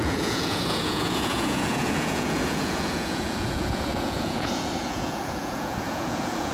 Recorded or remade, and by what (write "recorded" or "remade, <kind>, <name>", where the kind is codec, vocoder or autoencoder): remade, vocoder, Vocos